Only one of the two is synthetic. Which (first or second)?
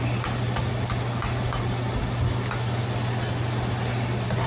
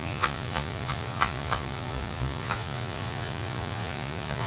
second